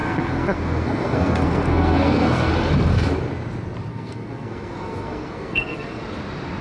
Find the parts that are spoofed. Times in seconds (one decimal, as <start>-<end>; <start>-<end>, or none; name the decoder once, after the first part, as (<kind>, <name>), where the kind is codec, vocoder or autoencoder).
0.0-2.5 (codec, SNAC); 3.9-6.0